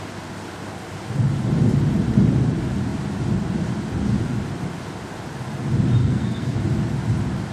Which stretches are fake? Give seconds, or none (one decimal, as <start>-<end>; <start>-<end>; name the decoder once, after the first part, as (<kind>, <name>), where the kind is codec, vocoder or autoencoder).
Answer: 6.0-6.6 (codec, SNAC)